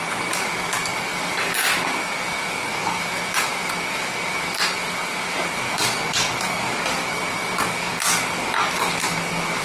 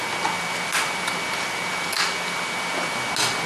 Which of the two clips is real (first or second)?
second